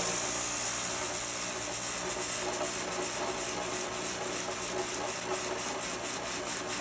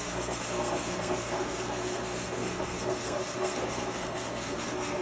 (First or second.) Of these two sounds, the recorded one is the first